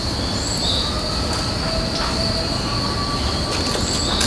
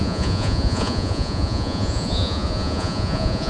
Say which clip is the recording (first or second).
first